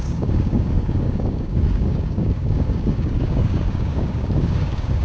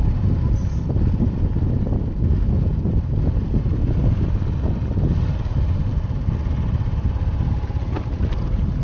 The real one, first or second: second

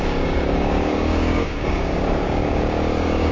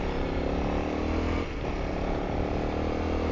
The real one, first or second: second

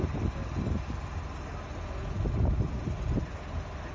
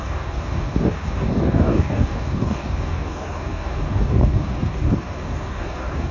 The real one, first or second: first